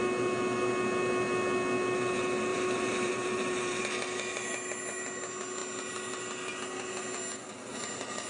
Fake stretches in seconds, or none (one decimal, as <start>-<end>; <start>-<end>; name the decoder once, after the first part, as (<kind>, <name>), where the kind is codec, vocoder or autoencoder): 2.5-3.8 (vocoder, BigVGAN v2)